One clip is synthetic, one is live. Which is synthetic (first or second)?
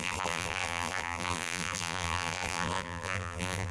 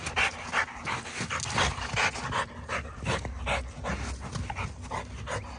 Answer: first